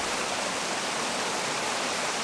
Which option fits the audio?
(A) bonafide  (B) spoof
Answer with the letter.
A